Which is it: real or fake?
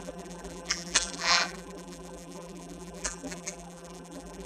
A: fake